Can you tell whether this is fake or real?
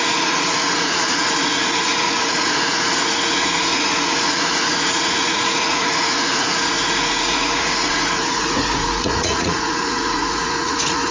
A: fake